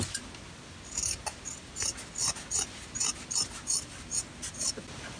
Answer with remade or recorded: recorded